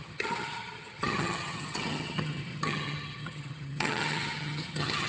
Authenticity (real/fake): fake